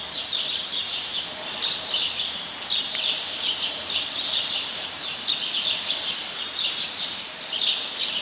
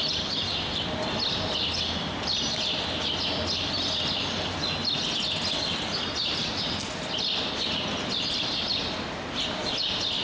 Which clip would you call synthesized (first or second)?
first